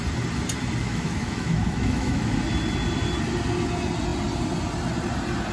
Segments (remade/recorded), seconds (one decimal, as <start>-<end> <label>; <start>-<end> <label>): 0.0-0.8 recorded; 0.8-2.3 remade; 2.3-5.5 recorded

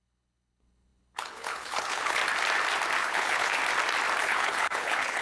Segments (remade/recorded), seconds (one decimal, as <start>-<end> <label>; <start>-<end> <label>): 0.0-2.2 remade; 2.2-3.0 recorded; 3.0-3.6 remade; 3.6-4.2 recorded; 4.2-5.2 remade

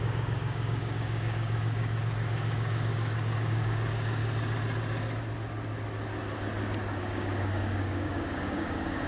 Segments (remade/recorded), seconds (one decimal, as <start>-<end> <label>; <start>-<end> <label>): 0.0-4.2 remade; 4.2-7.0 recorded; 7.0-9.1 remade